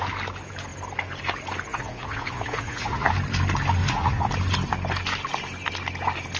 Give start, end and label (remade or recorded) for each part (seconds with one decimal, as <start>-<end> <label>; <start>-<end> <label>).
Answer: 0.0-1.7 recorded; 1.7-3.1 remade; 3.1-3.8 recorded; 3.8-4.3 remade; 4.3-6.4 recorded